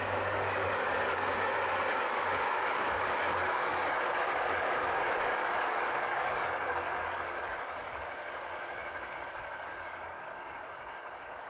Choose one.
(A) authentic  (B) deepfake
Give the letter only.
B